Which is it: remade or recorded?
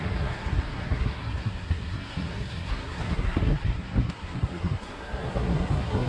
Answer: remade